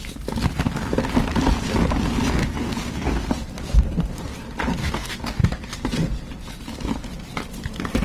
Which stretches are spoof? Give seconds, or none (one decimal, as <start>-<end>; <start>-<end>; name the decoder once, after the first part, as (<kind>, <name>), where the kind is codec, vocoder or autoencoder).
2.4-3.2 (codec, DAC); 4.8-5.4